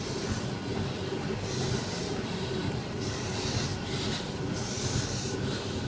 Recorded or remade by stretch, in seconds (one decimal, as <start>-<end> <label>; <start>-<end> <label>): 0.0-5.9 recorded